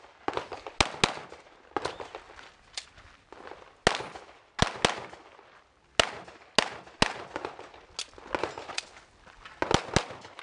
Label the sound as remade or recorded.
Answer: recorded